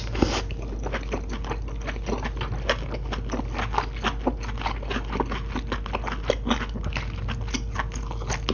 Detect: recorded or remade recorded